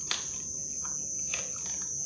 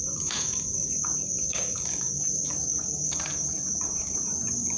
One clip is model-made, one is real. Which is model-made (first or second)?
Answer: second